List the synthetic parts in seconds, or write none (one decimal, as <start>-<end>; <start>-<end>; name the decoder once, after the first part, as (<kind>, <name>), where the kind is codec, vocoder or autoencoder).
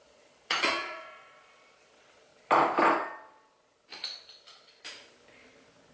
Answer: 0.0-2.3 (vocoder, Vocos)